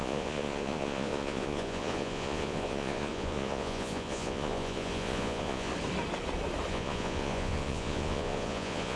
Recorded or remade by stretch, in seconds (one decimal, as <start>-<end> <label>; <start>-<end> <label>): 0.0-5.7 remade; 5.7-6.7 recorded; 6.7-9.0 remade